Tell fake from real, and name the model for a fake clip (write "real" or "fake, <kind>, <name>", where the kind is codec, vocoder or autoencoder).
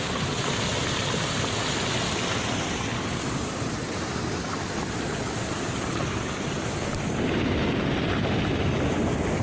real